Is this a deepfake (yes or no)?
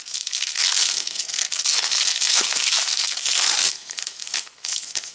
yes